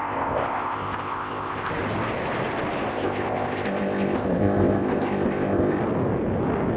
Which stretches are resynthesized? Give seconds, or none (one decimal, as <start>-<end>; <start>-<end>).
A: 0.0-1.7; 2.9-5.8